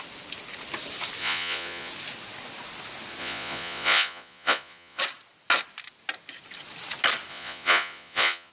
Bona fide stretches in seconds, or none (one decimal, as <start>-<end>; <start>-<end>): 0.0-1.2; 1.9-3.2; 5.0-7.3